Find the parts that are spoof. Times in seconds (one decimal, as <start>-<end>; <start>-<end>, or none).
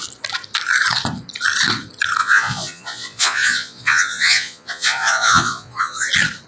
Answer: 2.2-6.1